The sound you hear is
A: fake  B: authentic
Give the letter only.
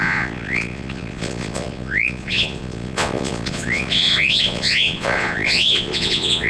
A